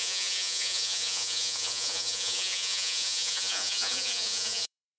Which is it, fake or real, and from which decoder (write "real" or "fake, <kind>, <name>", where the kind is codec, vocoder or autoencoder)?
fake, vocoder, Vocos